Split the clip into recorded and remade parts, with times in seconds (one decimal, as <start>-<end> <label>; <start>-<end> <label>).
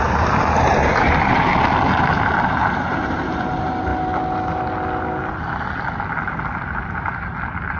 0.0-1.5 remade; 1.5-2.5 recorded; 2.5-3.9 remade; 3.9-7.8 recorded